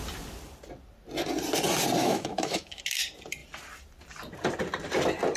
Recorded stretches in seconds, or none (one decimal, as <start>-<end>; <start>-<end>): 0.0-2.0; 2.8-5.4